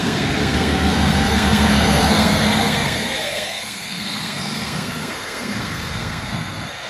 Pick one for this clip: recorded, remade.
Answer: remade